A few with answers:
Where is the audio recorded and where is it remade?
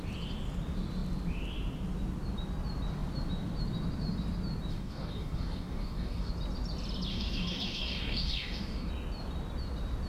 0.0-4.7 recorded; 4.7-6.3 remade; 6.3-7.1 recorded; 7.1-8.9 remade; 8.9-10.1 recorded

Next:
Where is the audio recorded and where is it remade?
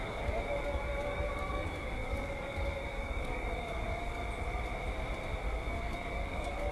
0.0-4.2 remade; 4.2-5.7 recorded; 5.7-6.7 remade